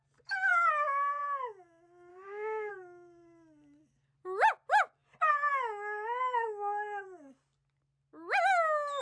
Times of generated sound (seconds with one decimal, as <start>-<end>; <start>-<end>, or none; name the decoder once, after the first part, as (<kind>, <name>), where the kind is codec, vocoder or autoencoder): 2.1-2.7 (autoencoder, DAC-VAE)